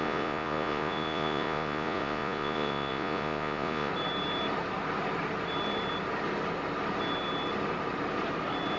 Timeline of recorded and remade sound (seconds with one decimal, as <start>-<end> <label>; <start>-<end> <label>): 0.0-3.9 remade; 3.9-8.8 recorded